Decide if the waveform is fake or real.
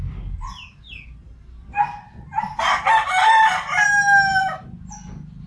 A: real